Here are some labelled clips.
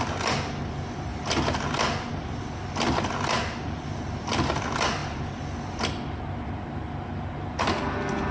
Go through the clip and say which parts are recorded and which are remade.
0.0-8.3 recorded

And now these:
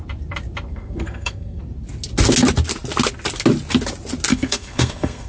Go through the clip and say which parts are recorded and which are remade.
0.0-0.7 recorded; 0.7-1.6 remade; 1.6-4.3 recorded; 4.3-5.3 remade

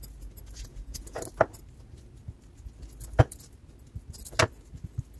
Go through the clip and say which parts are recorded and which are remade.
0.0-0.7 recorded; 0.7-1.2 remade; 1.2-5.2 recorded

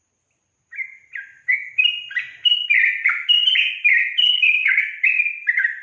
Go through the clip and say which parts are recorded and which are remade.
0.0-4.2 recorded; 4.2-4.8 remade; 4.8-5.8 recorded

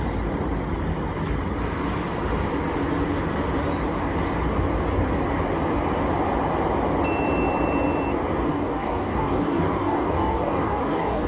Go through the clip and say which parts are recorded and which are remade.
0.0-8.5 recorded; 8.5-11.3 remade